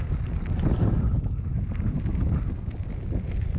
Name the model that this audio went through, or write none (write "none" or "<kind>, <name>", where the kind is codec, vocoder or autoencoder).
none